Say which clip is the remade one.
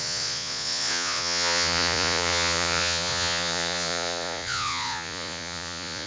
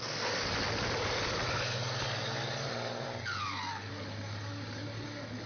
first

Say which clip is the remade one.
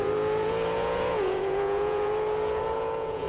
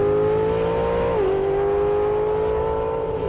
first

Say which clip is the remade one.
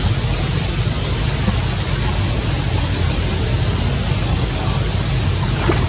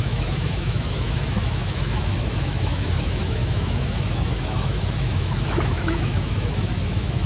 second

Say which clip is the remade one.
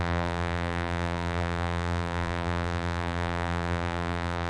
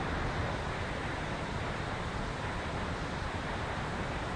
first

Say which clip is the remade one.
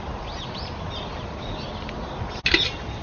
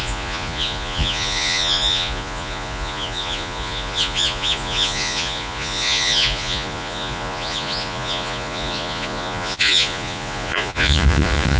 second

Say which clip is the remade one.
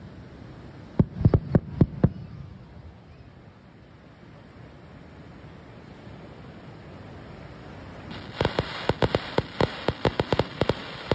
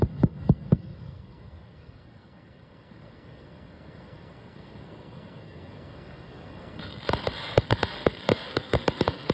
second